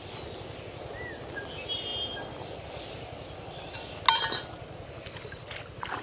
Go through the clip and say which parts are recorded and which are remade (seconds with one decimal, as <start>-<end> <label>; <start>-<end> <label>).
0.0-6.0 recorded